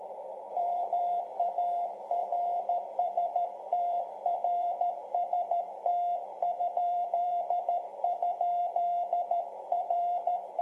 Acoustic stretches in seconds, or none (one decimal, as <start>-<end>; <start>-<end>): 2.2-2.9; 5.9-6.6; 7.9-8.6